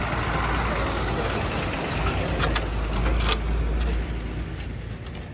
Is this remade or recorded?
recorded